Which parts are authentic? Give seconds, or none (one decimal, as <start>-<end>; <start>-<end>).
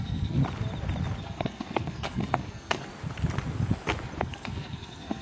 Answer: 0.4-1.2; 2.9-4.2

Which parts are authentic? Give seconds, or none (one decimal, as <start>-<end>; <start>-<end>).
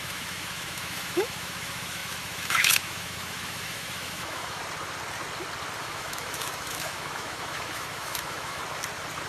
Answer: 4.6-5.8; 8.6-9.3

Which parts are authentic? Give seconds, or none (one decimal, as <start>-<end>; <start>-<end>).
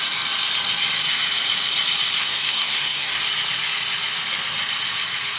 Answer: 0.0-2.2; 3.2-5.4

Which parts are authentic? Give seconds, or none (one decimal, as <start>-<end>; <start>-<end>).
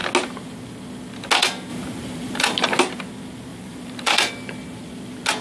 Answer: 0.0-1.7; 2.8-3.5; 4.3-5.4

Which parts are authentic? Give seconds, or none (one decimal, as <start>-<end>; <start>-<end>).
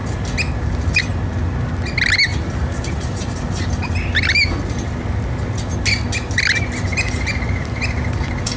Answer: 0.0-8.6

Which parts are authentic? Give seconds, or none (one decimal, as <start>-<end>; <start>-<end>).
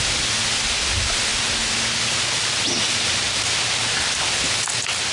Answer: 0.0-5.1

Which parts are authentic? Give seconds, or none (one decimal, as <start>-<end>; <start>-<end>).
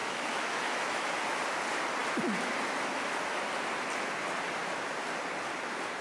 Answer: 1.1-6.0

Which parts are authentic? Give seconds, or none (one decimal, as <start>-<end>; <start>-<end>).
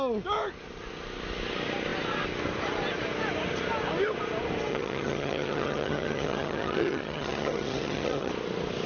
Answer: 0.0-4.7; 8.3-8.9